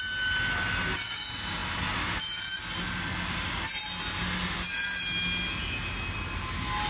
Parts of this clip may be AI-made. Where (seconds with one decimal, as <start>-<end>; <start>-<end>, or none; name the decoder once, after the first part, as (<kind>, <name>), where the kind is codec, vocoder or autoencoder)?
none